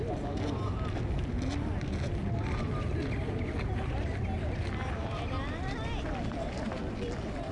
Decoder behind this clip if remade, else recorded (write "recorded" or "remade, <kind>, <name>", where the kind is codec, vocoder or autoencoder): recorded